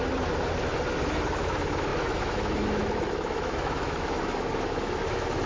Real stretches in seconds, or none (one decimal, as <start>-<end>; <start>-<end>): 0.0-1.1